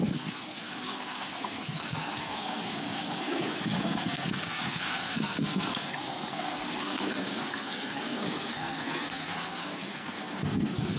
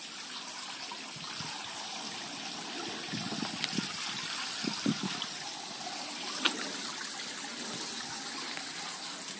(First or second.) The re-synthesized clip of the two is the first